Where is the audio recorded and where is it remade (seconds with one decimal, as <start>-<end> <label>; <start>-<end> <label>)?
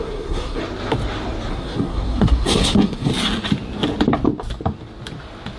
0.0-0.6 remade; 0.6-1.5 recorded; 1.5-3.1 remade; 3.1-5.6 recorded